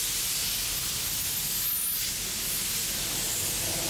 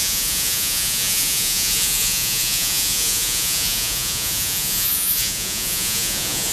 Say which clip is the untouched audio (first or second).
first